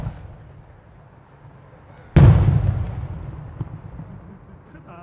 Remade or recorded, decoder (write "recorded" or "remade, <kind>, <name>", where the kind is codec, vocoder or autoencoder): recorded